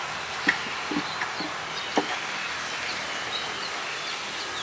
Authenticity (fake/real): real